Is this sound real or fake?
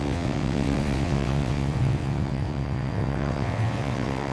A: fake